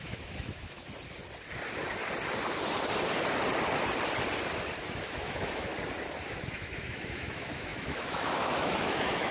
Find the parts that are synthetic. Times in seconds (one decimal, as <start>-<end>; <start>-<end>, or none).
0.0-0.8; 5.0-5.7; 6.3-9.3

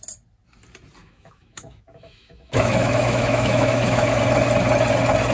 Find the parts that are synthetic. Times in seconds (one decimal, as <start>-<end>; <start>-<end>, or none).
1.0-4.2